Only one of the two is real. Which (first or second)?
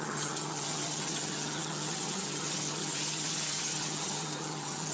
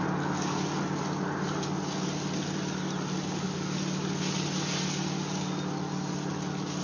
second